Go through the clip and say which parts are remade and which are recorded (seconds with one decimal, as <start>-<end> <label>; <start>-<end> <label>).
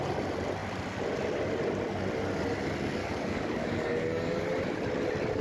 0.0-3.0 recorded; 3.0-4.4 remade; 4.4-5.4 recorded